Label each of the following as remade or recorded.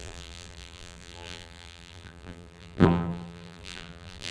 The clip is remade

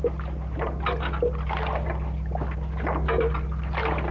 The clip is recorded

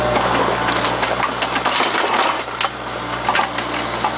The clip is recorded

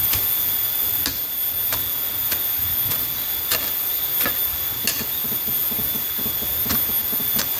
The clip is recorded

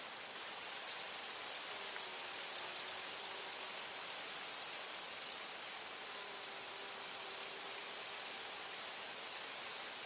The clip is recorded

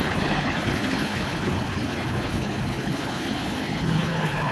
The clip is remade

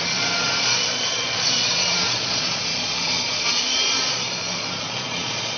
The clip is remade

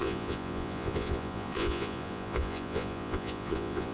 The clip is remade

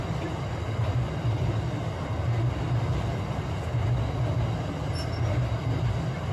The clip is recorded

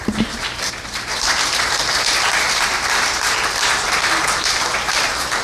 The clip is remade